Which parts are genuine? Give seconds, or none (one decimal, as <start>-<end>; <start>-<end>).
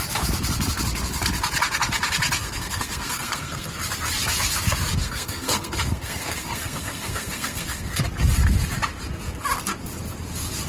0.0-2.4; 3.7-5.0; 8.0-10.7